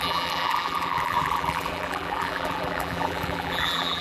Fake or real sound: fake